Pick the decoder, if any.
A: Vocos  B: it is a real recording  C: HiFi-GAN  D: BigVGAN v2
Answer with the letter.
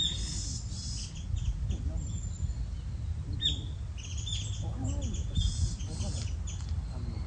B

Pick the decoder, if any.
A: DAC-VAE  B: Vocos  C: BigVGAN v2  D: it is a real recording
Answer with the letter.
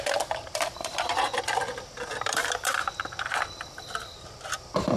C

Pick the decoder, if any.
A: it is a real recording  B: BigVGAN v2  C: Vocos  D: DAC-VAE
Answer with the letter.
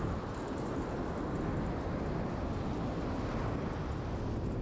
A